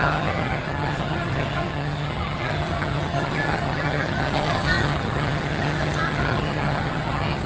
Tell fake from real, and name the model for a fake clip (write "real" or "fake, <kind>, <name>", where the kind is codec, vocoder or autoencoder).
fake, vocoder, HiFi-GAN